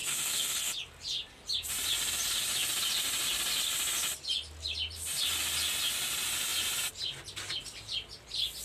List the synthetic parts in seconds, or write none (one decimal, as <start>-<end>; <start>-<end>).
0.0-0.7